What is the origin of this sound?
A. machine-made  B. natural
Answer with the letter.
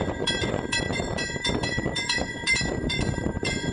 A